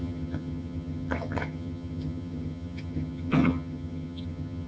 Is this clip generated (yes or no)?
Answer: yes